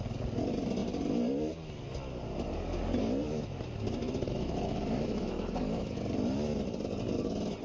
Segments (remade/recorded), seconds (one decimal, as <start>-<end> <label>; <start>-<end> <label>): 0.0-4.0 recorded; 4.0-6.0 remade; 6.0-7.6 recorded